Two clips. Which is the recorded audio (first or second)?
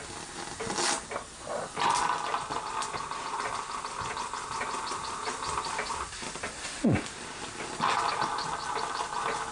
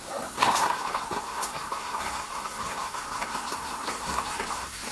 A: first